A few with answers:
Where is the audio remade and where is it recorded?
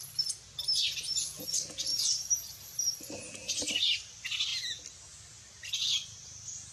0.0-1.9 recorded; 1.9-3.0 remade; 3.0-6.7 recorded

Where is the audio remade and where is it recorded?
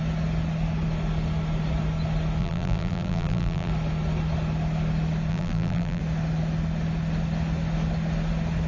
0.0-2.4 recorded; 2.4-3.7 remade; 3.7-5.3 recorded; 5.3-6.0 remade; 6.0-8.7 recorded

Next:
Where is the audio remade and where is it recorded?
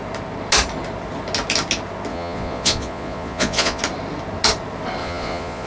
0.0-2.1 recorded; 2.1-3.8 remade; 3.8-5.0 recorded; 5.0-5.7 remade